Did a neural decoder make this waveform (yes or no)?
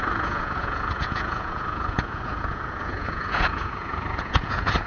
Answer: yes